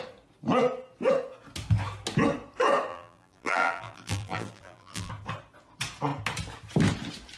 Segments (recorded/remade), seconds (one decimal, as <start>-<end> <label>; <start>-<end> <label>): 0.0-2.9 recorded; 2.9-5.1 remade; 5.1-7.4 recorded